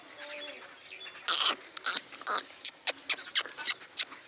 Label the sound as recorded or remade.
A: recorded